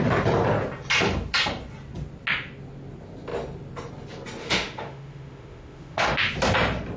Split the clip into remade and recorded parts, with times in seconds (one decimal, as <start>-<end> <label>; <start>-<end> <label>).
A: 0.0-4.4 recorded; 4.4-6.2 remade; 6.2-7.0 recorded